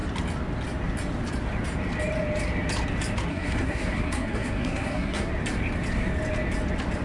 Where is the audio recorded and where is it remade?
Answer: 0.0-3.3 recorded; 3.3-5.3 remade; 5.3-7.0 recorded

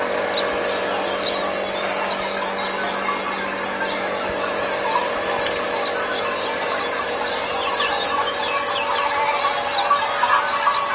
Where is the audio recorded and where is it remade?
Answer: 0.0-10.9 recorded

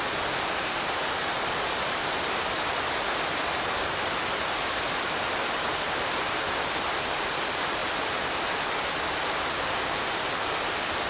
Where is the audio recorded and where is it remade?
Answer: 0.0-11.1 recorded